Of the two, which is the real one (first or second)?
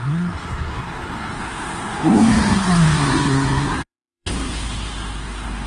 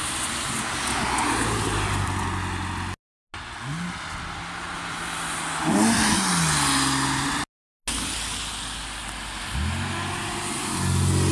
second